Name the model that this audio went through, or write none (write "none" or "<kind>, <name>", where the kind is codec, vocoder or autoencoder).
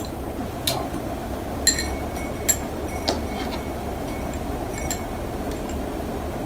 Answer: none